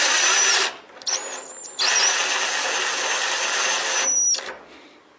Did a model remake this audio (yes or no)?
no